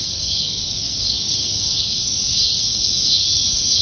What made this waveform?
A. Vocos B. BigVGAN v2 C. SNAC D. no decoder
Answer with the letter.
C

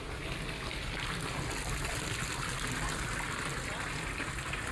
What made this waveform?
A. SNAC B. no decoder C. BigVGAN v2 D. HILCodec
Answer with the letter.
B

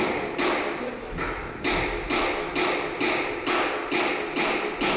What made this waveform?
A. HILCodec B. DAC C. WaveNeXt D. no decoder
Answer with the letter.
D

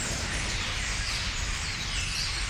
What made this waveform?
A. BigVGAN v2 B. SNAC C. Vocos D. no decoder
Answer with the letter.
D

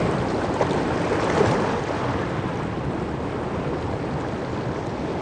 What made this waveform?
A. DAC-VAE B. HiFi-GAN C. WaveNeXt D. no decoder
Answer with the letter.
D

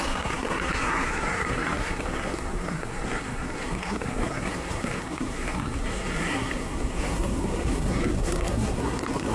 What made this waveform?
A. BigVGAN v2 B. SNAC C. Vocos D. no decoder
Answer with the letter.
B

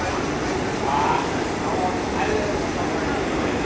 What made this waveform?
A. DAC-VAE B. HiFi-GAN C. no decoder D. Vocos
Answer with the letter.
C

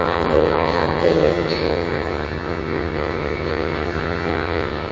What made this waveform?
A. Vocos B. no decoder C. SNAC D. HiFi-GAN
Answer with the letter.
D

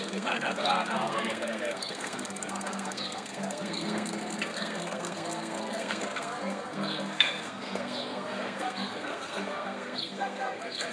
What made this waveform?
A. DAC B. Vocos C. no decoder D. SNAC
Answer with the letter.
D